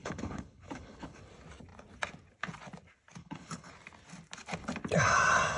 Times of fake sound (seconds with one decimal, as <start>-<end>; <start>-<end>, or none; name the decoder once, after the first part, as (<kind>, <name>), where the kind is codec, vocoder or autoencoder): 0.0-1.2 (codec, HILCodec); 3.2-3.7